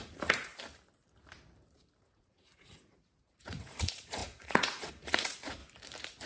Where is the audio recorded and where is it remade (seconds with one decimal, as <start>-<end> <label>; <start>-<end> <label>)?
0.0-0.5 remade; 0.5-2.0 recorded; 2.0-5.6 remade; 5.6-6.3 recorded